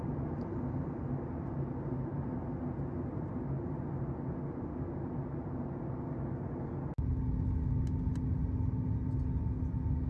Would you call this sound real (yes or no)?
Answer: yes